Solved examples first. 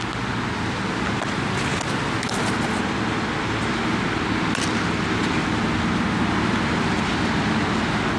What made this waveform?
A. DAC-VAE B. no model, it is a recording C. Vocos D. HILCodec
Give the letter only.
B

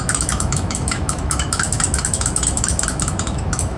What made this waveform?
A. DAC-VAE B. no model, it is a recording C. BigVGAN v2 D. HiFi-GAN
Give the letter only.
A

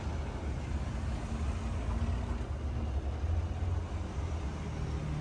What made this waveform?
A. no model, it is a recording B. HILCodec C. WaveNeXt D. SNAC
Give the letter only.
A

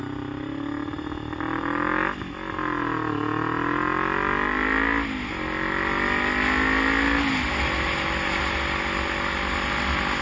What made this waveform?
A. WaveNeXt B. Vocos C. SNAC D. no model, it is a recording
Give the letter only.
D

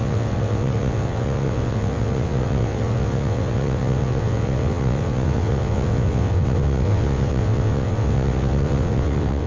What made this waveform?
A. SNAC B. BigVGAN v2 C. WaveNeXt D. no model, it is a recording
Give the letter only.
C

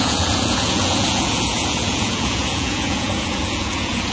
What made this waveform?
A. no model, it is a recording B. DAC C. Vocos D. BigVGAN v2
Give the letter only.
C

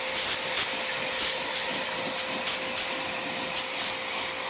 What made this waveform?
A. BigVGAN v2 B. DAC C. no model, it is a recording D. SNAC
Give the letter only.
C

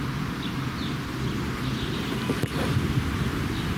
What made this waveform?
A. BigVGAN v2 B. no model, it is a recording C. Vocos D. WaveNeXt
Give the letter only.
B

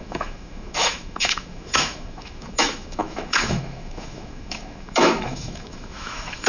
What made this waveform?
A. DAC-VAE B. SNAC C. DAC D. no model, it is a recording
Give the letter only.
A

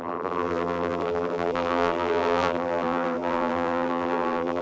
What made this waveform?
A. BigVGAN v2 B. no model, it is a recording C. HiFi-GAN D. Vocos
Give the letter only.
A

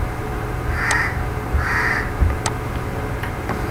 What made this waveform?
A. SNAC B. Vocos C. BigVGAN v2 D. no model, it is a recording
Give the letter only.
C